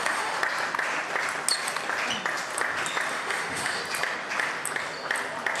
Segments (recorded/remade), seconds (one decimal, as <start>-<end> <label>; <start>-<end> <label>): 0.0-0.4 remade; 0.4-3.1 recorded; 3.1-3.8 remade; 3.8-5.6 recorded